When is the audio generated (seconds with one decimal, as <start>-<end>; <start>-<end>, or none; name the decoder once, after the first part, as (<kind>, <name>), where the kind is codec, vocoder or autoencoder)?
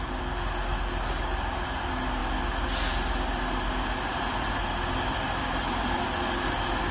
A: 5.4-6.0 (vocoder, BigVGAN v2)